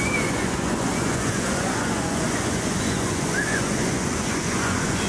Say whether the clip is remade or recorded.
remade